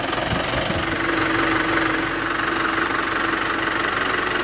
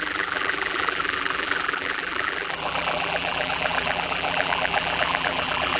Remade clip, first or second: second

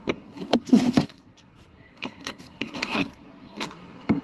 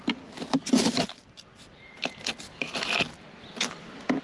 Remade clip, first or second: first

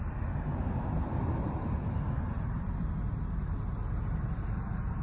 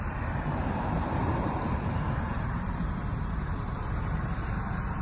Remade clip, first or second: second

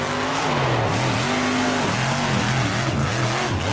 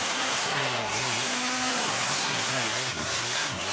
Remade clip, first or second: second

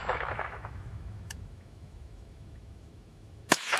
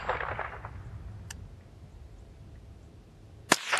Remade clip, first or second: first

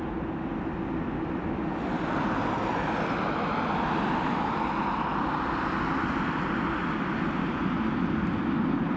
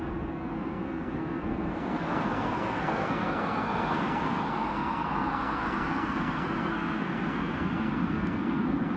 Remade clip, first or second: second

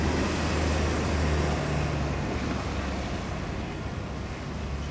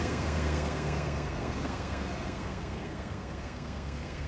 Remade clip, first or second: second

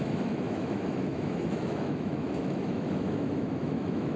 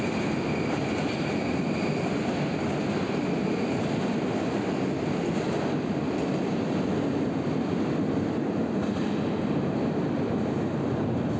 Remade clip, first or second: first